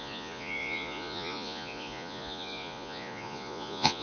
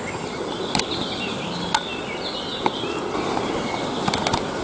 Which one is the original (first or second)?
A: second